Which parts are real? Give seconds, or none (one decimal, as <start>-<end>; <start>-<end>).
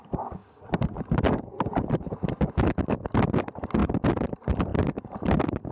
0.4-1.2; 3.8-4.3